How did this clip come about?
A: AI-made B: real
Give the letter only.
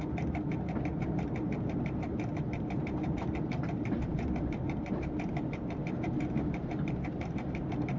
A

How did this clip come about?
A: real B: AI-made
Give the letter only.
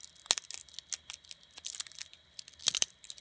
A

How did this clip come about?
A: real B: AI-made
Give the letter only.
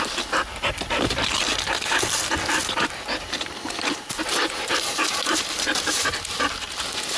A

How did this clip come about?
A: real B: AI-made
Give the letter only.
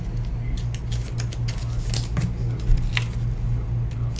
A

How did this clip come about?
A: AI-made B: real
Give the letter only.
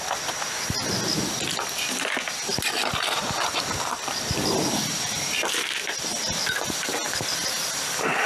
A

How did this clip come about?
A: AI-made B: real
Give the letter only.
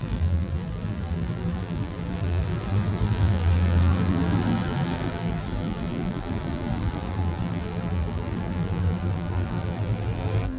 A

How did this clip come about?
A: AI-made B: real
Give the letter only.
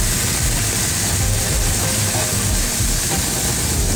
B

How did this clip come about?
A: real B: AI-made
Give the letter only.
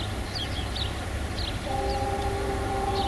A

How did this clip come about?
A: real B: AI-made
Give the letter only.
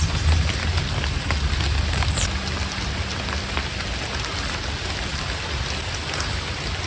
A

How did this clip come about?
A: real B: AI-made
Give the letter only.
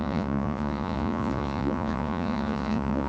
B